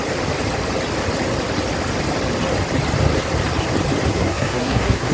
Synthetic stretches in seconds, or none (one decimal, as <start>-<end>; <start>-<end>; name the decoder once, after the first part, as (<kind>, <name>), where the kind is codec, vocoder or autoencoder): 4.1-5.1 (codec, SNAC)